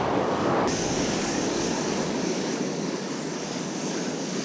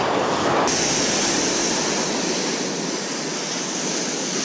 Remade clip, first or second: first